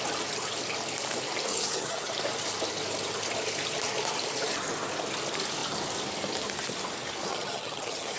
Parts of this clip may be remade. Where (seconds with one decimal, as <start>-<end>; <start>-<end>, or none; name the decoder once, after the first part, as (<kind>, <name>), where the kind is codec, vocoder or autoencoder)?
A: 1.5-2.1 (vocoder, HiFi-GAN); 7.3-8.2